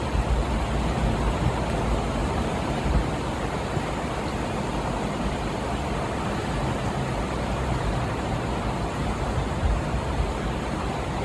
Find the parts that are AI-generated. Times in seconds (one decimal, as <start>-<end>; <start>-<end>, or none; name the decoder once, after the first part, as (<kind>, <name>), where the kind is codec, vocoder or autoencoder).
2.2-3.4 (vocoder, BigVGAN v2)